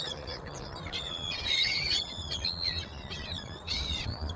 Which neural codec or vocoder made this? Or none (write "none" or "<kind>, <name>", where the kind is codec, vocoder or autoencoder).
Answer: vocoder, WaveNeXt